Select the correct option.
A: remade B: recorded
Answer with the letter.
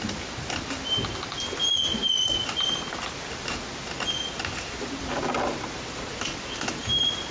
B